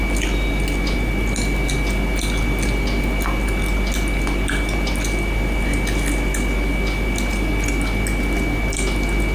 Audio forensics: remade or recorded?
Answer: recorded